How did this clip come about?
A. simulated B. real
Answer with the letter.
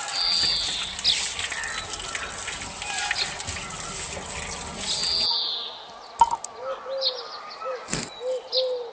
B